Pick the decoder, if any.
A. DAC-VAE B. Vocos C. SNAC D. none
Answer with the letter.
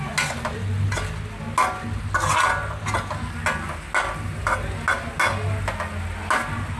D